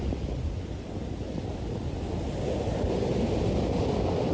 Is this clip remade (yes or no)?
no